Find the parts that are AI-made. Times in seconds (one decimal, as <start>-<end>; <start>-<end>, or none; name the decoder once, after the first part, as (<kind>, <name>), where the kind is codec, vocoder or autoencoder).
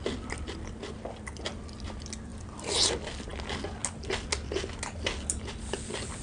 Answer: none